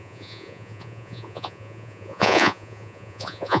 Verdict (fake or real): fake